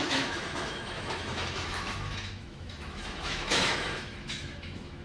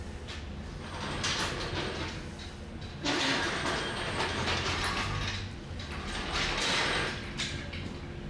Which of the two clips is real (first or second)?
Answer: second